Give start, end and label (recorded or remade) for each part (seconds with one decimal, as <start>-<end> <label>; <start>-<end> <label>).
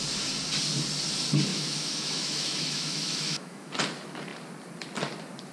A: 0.0-1.5 recorded; 1.5-3.7 remade; 3.7-5.5 recorded